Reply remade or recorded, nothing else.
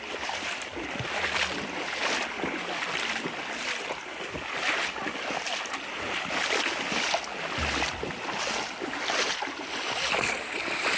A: recorded